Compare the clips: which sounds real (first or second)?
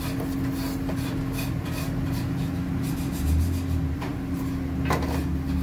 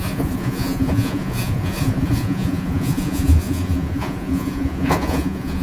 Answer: first